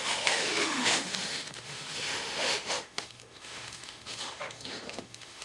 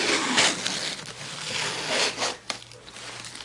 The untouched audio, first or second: second